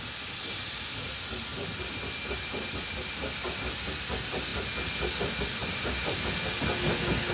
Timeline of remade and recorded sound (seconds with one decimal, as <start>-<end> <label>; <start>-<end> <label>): 0.0-1.5 recorded; 1.5-3.6 remade; 3.6-5.6 recorded; 5.6-6.4 remade; 6.4-7.3 recorded